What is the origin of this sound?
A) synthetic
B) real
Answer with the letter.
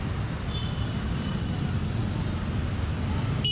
B